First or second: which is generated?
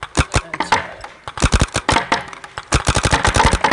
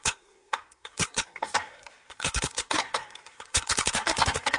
second